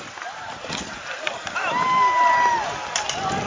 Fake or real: real